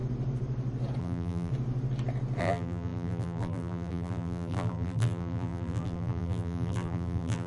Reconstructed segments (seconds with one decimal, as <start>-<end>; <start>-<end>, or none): 1.0-1.5; 2.4-7.5